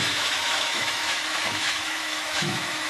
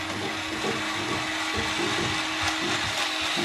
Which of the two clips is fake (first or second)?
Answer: first